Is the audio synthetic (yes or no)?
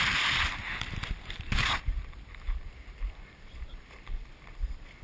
yes